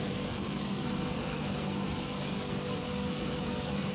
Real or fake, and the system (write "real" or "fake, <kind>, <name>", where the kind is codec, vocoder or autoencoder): fake, codec, SNAC